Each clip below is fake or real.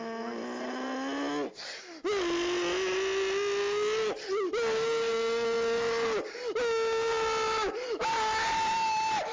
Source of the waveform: real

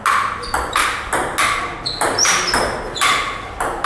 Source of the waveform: real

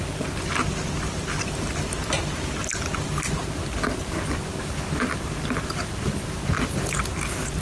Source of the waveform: real